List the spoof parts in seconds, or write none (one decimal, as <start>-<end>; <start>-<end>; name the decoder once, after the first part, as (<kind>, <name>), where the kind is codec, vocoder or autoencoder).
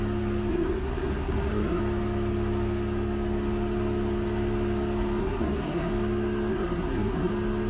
0.5-1.8 (codec, SNAC); 5.2-5.9; 6.5-7.3